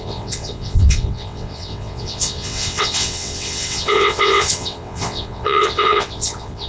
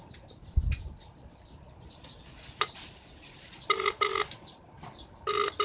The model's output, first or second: first